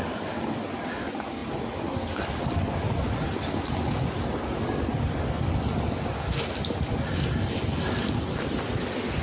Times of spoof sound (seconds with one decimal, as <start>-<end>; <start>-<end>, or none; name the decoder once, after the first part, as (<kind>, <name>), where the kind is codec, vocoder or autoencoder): none

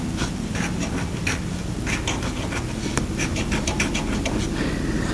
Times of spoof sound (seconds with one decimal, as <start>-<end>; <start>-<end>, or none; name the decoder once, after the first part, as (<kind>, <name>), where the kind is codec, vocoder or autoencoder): 3.3-3.9 (vocoder, BigVGAN v2)

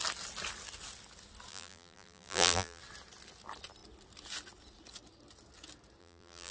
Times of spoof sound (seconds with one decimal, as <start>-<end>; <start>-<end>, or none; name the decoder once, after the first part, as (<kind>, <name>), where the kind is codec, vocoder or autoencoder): 1.5-2.8 (vocoder, BigVGAN v2); 6.0-6.5

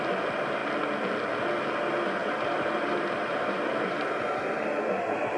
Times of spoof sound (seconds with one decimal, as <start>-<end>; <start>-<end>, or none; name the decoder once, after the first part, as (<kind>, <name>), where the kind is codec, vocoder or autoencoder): 2.2-5.4 (vocoder, BigVGAN v2)

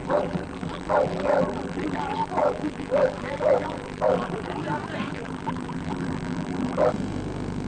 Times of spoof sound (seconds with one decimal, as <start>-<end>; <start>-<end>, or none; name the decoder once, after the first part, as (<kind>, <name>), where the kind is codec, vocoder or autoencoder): 0.0-4.6 (vocoder, BigVGAN v2); 5.1-6.9

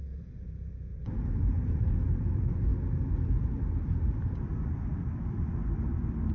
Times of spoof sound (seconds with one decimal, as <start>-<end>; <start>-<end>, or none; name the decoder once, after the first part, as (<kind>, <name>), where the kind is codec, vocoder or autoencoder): 0.0-0.9 (vocoder, BigVGAN v2); 1.7-2.7; 4.1-6.3

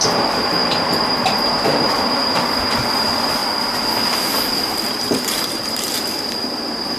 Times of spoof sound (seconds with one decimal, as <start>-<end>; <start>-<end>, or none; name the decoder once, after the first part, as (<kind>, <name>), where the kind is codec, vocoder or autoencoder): 0.0-3.4 (vocoder, BigVGAN v2); 4.9-7.0

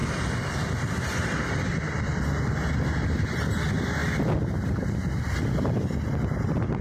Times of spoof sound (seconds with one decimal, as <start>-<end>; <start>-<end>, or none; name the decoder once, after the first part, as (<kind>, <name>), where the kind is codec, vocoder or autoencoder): 2.7-4.0 (vocoder, BigVGAN v2); 6.1-6.8